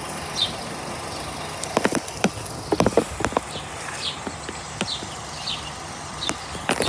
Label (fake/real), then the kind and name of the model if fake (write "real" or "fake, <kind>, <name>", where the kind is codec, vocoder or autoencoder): real